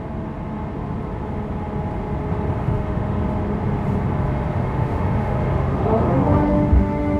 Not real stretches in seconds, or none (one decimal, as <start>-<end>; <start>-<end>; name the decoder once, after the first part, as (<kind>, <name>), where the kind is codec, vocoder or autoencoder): 2.6-3.2 (autoencoder, DAC-VAE); 4.6-7.2

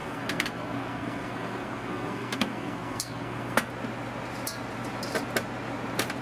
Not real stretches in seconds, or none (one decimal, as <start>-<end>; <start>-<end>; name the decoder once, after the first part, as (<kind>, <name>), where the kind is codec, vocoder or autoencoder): 0.0-3.7 (codec, SNAC)

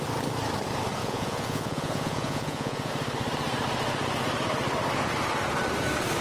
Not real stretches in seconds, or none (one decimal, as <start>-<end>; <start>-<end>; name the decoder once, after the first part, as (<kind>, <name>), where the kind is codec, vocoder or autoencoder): 1.0-2.9 (vocoder, Vocos)

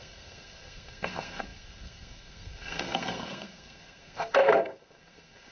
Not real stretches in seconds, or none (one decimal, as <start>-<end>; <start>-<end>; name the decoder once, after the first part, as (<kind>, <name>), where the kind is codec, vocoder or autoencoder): 0.0-5.5 (codec, SNAC)

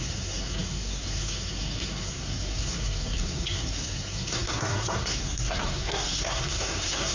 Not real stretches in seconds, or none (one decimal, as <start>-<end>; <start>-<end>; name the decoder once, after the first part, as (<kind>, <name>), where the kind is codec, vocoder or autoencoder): 0.0-7.1 (codec, SNAC)